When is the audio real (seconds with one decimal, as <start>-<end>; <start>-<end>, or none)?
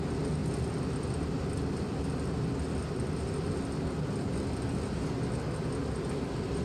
0.0-6.6